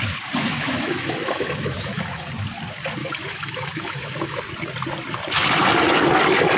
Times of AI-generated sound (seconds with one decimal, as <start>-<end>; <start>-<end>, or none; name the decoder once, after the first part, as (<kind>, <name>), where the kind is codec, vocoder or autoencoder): 0.4-2.3 (autoencoder, DAC-VAE); 3.0-4.4